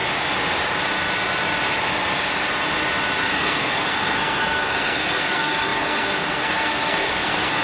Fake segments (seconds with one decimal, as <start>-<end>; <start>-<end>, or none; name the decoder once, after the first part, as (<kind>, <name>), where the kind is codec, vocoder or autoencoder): 3.2-7.6 (codec, SNAC)